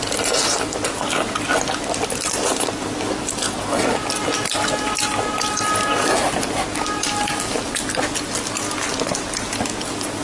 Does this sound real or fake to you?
real